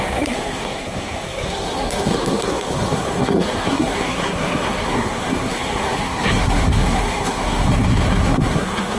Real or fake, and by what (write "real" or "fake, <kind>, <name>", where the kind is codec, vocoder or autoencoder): fake, codec, SNAC